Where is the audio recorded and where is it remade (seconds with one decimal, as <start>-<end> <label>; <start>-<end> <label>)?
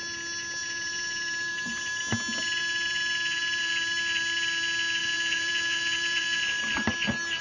0.0-0.6 recorded; 0.6-2.0 remade; 2.0-2.6 recorded; 2.6-3.7 remade; 3.7-5.0 recorded; 5.0-6.4 remade; 6.4-7.4 recorded